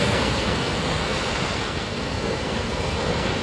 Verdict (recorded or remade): remade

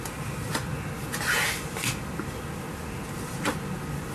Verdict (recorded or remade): recorded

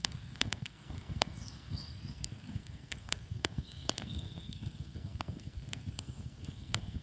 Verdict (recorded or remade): remade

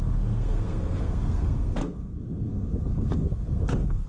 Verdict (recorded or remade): remade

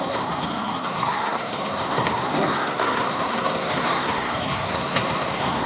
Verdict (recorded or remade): remade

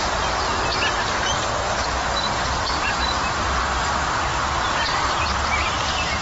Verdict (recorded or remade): remade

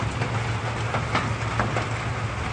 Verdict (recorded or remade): recorded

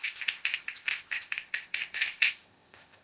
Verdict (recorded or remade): remade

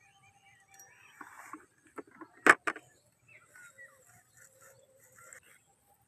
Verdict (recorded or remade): recorded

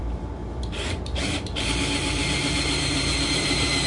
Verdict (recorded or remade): remade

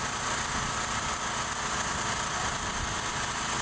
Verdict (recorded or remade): recorded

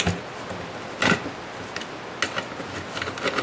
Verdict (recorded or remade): recorded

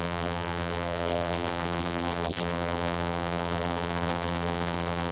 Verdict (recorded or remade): remade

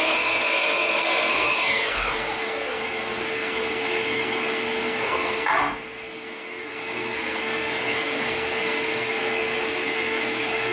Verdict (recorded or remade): remade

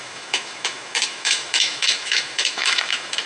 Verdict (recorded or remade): remade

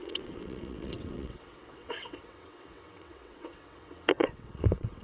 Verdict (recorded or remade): remade